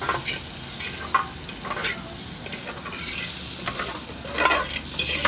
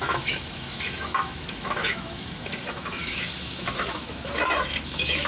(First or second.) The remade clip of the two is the second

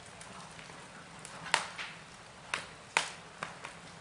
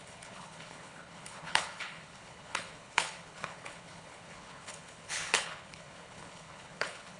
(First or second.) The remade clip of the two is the second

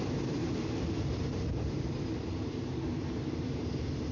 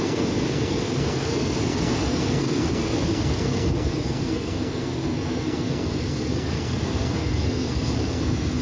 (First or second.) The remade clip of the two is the second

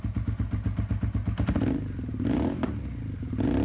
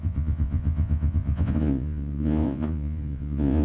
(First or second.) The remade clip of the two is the second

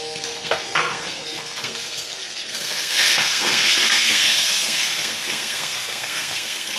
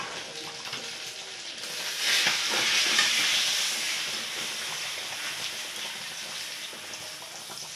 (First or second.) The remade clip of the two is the first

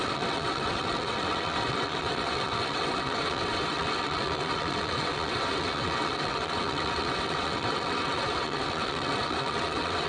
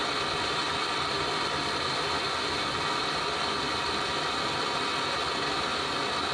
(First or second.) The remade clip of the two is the first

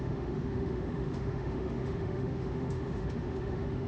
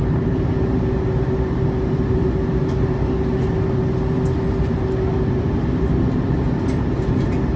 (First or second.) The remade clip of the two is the first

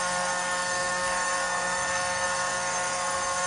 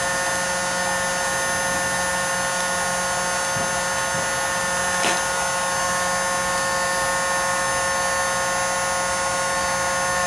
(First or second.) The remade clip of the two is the first